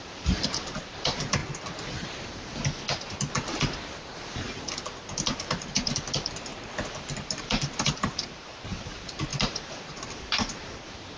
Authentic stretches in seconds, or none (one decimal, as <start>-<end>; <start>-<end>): 1.4-5.4; 6.5-7.4